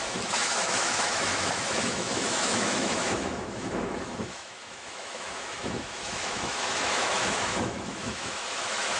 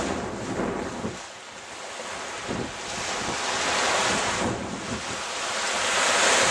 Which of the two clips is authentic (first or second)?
second